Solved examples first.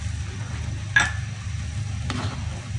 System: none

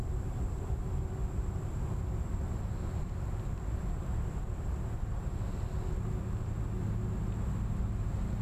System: none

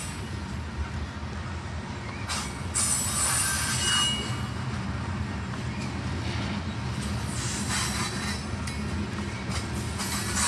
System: none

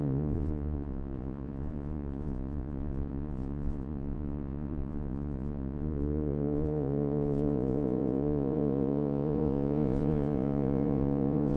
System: vocoder, Vocos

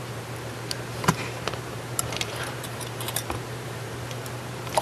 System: vocoder, BigVGAN v2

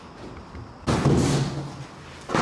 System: none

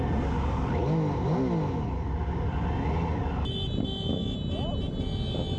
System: none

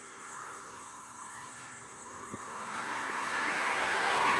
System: codec, SNAC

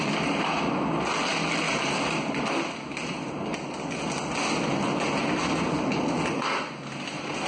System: none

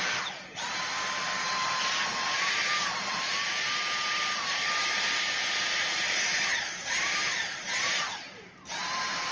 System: vocoder, BigVGAN v2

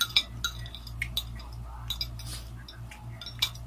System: none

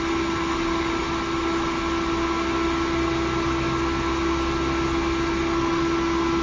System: none